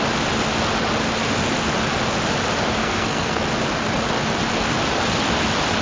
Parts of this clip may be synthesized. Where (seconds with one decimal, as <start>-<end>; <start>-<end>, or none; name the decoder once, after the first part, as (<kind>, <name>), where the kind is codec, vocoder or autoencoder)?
2.8-3.4 (codec, SNAC)